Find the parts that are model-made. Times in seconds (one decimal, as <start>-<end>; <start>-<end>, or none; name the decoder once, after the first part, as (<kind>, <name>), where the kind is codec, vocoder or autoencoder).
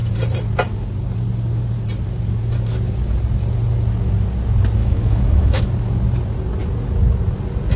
4.8-5.6 (autoencoder, DAC-VAE)